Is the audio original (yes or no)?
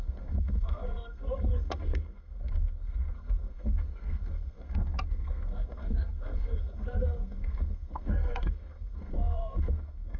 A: no